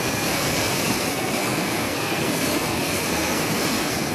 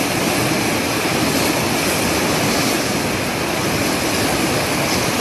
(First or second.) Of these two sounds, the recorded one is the second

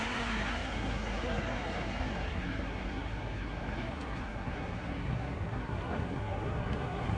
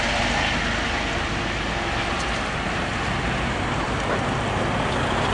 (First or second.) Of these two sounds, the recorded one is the second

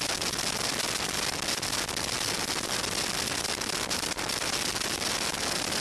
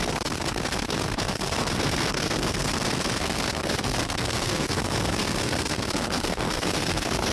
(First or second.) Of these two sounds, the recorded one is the first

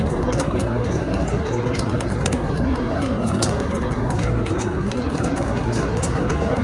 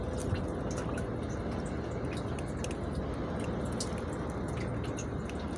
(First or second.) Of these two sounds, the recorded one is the second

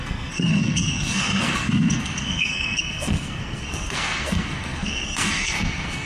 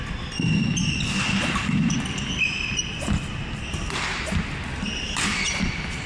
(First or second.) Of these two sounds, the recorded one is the second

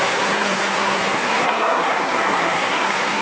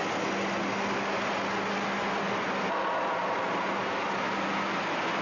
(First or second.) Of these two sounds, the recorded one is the second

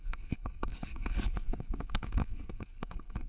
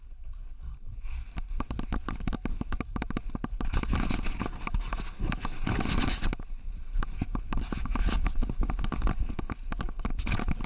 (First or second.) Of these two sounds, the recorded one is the second